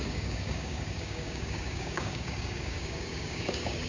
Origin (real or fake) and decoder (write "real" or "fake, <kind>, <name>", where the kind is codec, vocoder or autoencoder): fake, codec, DAC